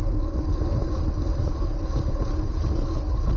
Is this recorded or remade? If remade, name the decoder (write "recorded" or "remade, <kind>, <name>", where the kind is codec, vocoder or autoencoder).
recorded